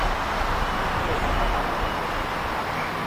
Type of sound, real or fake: real